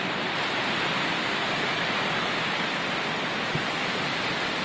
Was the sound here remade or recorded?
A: recorded